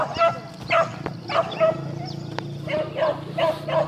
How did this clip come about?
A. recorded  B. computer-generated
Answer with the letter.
A